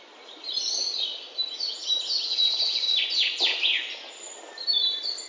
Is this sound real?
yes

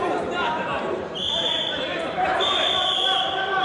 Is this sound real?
no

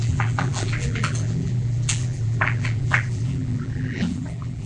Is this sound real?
no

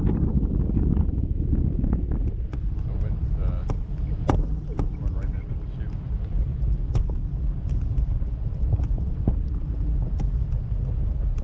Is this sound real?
yes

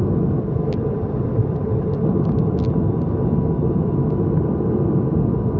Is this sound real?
yes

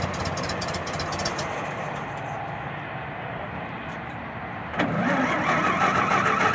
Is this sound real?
yes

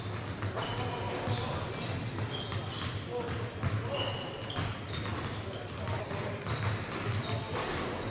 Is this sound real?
yes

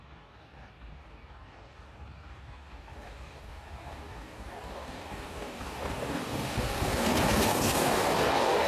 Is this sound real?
no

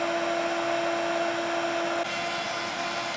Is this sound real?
yes